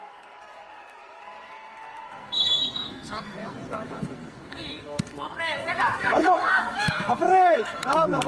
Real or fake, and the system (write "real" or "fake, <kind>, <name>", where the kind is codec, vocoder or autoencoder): fake, codec, SNAC